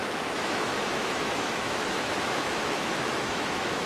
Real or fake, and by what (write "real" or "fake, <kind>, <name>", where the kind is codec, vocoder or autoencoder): fake, autoencoder, DAC-VAE